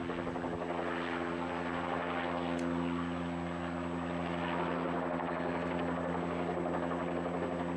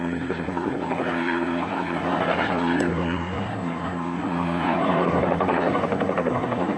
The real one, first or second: first